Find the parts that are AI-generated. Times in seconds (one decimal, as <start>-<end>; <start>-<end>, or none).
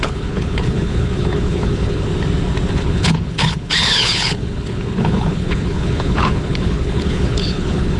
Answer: 0.0-2.1; 2.7-8.0